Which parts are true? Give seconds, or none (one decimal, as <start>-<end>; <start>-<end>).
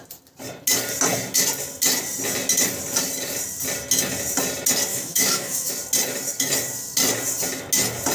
0.0-4.9; 5.7-8.1